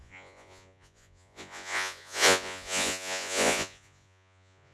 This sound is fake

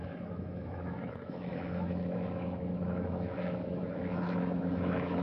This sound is fake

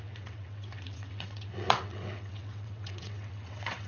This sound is fake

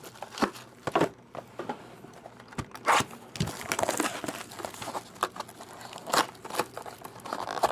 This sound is real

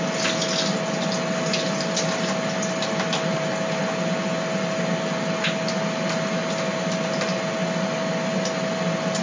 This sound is real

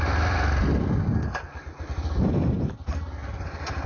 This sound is real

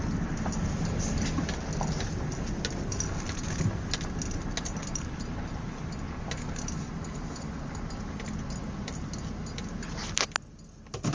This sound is real